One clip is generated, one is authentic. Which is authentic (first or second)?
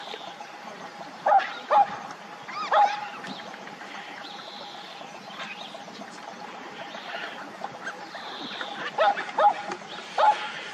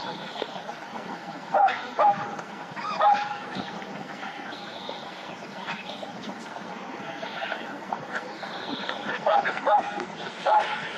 first